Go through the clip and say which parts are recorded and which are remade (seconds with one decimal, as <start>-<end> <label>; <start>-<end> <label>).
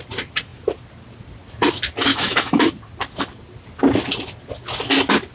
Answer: 0.0-2.1 recorded; 2.1-2.7 remade; 2.7-5.3 recorded